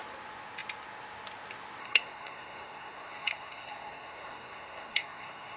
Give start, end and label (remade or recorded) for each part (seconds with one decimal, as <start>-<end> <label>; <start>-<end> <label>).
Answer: 0.0-1.8 recorded; 1.8-5.6 remade